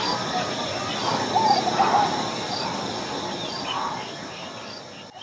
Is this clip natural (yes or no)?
yes